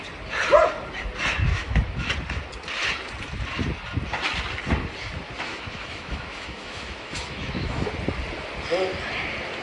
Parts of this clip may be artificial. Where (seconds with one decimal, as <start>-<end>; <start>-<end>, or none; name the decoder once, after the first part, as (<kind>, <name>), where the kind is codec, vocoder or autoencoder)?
1.5-2.1 (autoencoder, DAC-VAE); 5.5-7.9